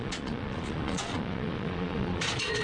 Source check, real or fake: fake